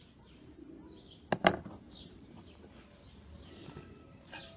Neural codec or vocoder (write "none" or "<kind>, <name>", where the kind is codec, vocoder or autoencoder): none